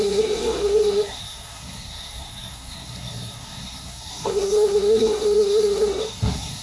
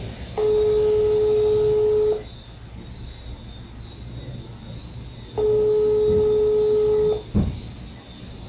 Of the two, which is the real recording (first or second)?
second